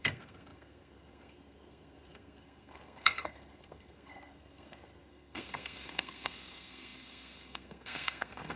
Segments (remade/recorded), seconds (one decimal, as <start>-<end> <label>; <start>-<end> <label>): 0.0-8.6 remade